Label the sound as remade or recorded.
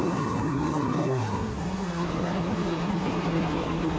remade